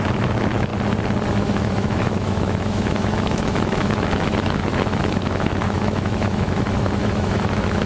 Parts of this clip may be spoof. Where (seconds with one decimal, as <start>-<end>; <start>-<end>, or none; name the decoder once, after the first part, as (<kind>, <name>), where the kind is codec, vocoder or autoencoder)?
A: 0.0-0.7 (autoencoder, DAC-VAE); 1.3-7.9